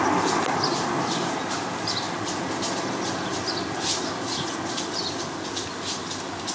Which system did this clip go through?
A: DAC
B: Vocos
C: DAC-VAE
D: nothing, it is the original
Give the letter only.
D